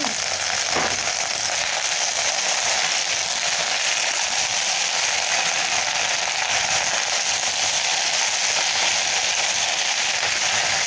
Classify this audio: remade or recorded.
recorded